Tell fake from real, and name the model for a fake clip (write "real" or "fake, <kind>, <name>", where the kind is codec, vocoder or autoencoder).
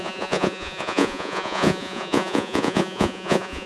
fake, vocoder, Vocos